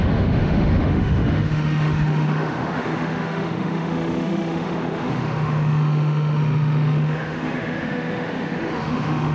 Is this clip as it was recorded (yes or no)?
no